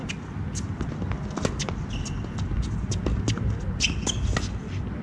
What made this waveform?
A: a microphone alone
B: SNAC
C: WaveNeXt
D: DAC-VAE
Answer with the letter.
A